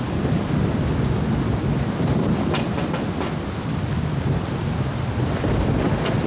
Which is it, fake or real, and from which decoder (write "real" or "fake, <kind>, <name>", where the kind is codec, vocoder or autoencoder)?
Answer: real